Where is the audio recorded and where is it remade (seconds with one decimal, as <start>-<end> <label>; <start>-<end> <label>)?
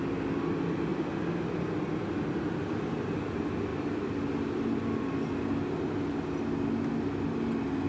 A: 0.0-7.9 recorded